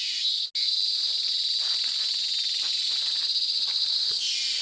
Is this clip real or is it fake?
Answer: real